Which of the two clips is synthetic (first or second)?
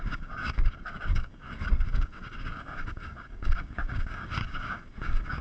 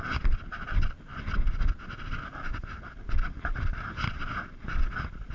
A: first